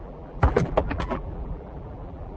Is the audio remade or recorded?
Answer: remade